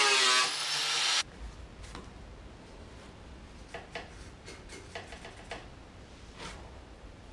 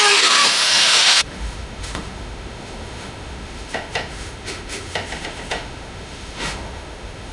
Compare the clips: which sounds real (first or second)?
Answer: first